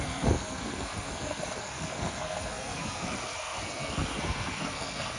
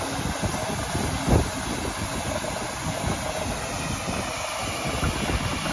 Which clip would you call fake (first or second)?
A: first